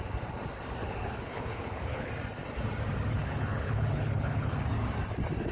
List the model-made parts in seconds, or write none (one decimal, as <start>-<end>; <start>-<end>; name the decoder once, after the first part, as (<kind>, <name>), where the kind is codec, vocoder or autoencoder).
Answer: 0.8-2.1 (codec, HILCodec); 3.2-4.5